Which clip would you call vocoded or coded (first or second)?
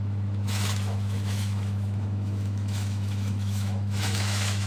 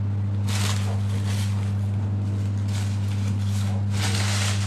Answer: first